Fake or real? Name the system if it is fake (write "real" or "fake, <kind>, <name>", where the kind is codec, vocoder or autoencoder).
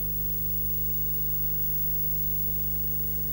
real